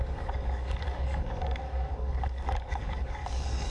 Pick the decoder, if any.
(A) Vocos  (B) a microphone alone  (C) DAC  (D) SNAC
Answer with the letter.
C